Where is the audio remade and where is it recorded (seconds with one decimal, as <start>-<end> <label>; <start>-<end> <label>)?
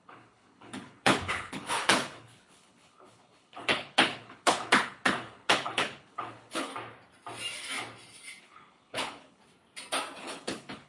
0.0-6.7 remade; 6.7-8.4 recorded; 8.4-9.4 remade; 9.4-10.2 recorded; 10.2-10.9 remade